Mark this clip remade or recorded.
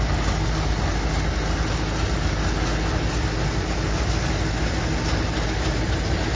recorded